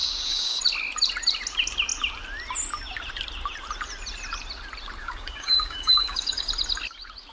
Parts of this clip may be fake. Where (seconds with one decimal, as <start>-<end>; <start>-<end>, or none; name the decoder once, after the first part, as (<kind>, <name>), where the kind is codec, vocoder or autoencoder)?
0.0-0.6 (codec, DAC); 5.0-6.5